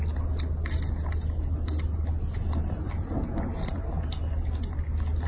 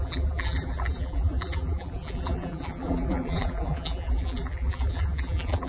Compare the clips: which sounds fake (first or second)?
second